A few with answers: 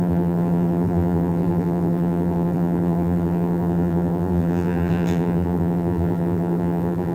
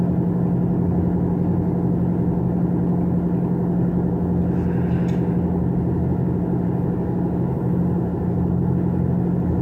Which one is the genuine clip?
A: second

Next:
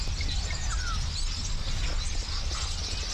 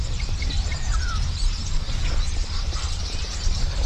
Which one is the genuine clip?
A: first